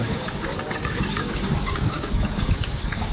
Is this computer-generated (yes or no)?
yes